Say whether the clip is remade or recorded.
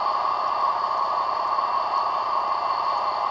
recorded